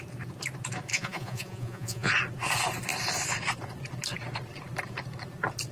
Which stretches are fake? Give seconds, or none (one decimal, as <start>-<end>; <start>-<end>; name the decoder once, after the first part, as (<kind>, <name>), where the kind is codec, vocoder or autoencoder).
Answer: 0.9-2.1 (vocoder, Vocos)